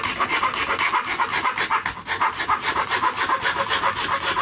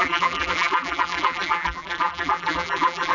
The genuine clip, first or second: first